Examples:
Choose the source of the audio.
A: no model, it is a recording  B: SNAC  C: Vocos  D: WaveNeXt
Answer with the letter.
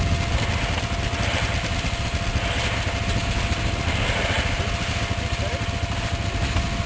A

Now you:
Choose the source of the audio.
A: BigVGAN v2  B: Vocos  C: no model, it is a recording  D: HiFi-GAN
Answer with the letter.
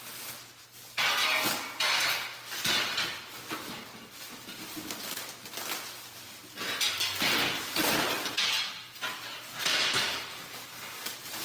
C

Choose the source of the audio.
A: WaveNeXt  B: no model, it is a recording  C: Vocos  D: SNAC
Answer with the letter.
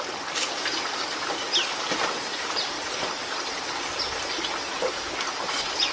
B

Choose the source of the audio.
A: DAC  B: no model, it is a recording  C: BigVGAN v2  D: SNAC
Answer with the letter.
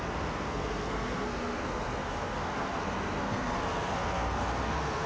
D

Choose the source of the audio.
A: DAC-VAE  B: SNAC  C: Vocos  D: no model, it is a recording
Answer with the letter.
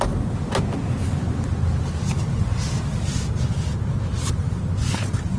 D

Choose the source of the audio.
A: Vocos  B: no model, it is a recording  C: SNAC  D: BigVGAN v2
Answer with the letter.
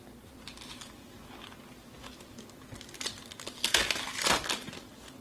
B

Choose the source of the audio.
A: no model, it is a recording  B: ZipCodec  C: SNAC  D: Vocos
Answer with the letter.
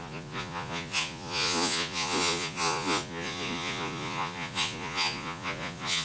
D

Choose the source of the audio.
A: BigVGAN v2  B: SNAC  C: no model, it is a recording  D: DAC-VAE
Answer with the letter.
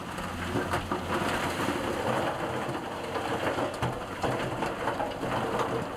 C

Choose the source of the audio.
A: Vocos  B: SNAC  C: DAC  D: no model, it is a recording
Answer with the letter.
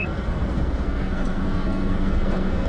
B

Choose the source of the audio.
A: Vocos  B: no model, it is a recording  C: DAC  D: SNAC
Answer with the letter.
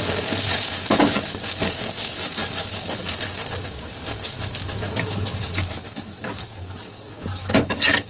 C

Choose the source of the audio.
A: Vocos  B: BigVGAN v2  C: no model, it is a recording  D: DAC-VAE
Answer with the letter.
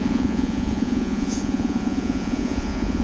A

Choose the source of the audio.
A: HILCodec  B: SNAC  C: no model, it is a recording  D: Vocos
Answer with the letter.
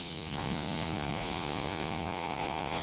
D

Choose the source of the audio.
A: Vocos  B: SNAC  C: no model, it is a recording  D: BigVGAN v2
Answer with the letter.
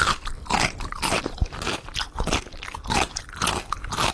C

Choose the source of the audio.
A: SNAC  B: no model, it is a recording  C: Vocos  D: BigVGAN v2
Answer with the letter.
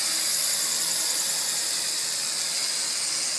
B